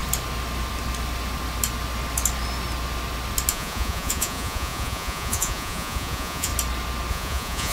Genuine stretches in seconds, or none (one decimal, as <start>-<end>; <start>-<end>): 0.0-3.5; 6.5-7.1